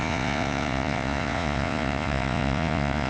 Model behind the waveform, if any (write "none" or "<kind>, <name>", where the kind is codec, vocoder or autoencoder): vocoder, Vocos